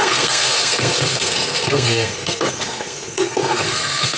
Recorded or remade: remade